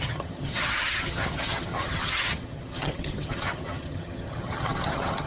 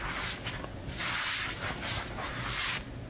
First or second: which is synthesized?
first